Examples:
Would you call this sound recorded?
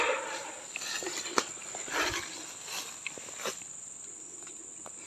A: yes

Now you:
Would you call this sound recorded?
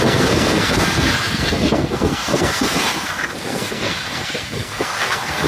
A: no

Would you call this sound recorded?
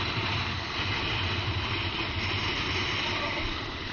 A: yes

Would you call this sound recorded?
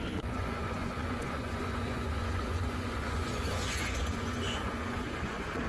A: no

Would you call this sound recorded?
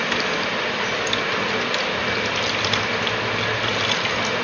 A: yes